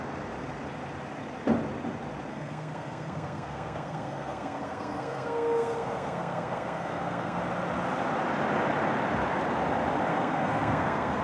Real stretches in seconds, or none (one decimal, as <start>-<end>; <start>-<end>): 0.0-2.3; 7.4-10.1